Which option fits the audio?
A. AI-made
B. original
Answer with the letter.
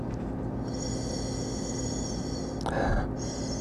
B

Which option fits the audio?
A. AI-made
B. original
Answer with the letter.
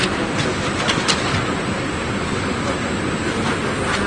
B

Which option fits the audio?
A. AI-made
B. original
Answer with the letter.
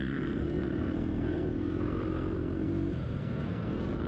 A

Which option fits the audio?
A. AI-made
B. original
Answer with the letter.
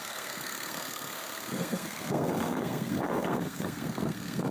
A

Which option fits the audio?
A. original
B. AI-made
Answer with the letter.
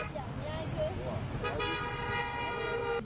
A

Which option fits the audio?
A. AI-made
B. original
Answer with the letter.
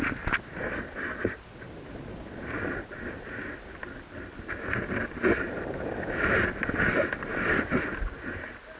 B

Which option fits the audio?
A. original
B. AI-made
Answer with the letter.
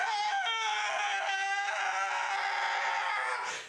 A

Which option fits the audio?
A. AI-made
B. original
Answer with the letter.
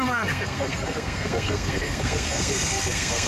A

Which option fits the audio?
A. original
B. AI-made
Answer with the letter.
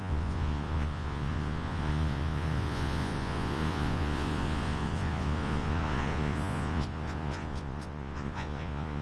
B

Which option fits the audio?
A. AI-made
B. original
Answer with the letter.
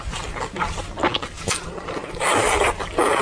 B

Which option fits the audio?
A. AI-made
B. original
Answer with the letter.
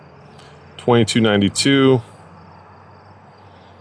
B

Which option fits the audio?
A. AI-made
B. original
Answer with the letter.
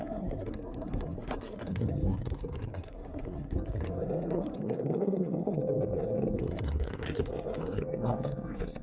A